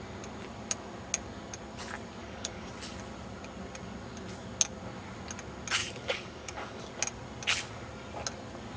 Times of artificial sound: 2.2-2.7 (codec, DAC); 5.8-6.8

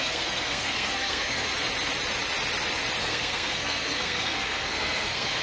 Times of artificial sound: 0.0-1.5 (codec, SNAC); 3.0-5.4

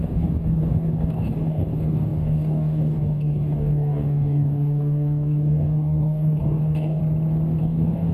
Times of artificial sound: 0.0-7.0 (codec, DAC); 7.6-8.1

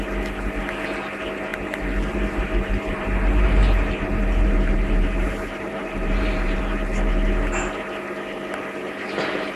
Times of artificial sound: 1.5-6.6 (vocoder, BigVGAN v2)

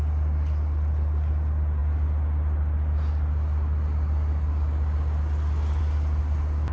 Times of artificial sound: none

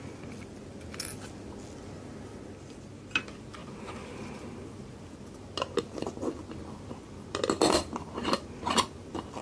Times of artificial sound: none

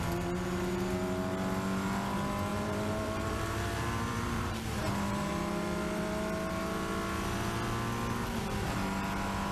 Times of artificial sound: 2.5-5.3 (vocoder, BigVGAN v2)

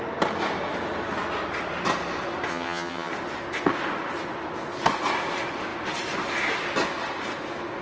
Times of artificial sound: 2.5-3.1 (vocoder, HiFi-GAN)